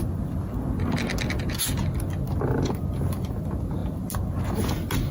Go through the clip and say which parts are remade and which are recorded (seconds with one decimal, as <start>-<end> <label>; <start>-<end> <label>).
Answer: 0.0-5.1 recorded